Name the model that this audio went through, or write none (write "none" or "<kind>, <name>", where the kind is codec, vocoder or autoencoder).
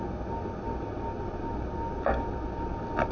none